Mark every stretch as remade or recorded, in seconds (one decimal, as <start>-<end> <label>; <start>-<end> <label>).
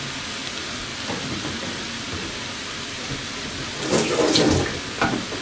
0.0-5.4 recorded